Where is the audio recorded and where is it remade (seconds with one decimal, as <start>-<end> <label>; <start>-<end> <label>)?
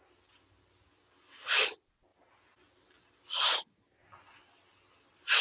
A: 0.0-5.4 recorded